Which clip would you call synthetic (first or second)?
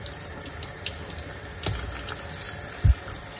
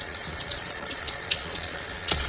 second